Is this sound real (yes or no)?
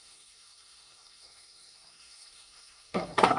no